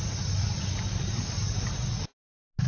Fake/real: real